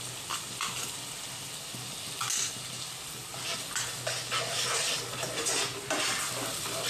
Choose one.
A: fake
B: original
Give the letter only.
B